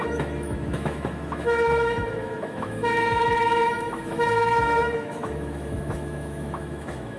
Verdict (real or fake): fake